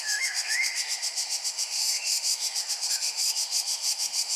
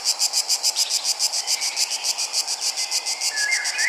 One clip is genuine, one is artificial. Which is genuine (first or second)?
second